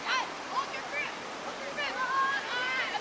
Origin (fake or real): real